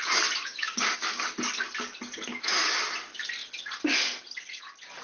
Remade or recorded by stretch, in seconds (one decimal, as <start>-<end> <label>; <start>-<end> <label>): 0.0-0.4 recorded; 0.4-1.2 remade; 1.2-2.3 recorded; 2.3-2.8 remade; 2.8-5.0 recorded